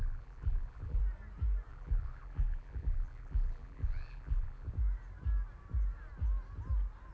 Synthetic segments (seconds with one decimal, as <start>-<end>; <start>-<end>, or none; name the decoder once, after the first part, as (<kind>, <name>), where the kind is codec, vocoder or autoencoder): 0.0-1.0 (vocoder, BigVGAN v2); 1.7-4.7